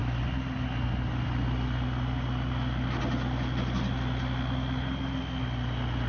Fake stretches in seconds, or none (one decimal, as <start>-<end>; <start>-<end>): none

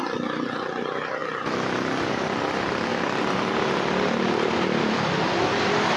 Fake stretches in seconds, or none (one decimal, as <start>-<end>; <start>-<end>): 0.0-2.9; 4.8-6.0

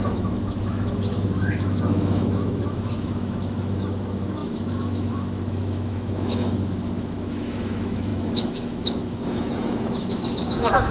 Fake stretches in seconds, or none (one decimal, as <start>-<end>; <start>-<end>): 0.0-10.9

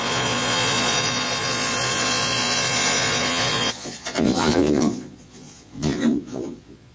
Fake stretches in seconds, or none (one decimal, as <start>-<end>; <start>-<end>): 0.0-6.9

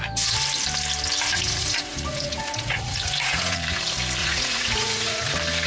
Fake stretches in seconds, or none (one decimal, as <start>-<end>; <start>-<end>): 1.3-3.8; 4.2-5.3

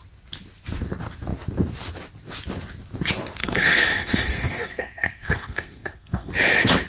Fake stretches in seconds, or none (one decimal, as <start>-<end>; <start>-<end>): 3.4-6.3

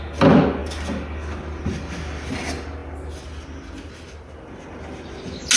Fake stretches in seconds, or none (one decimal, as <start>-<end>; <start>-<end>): none

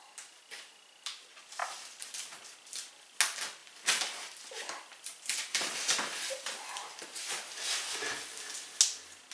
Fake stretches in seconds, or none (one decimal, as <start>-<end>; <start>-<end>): 1.6-2.9; 3.6-7.3